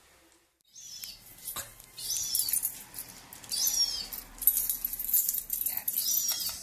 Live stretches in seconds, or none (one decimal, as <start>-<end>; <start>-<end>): 0.0-6.6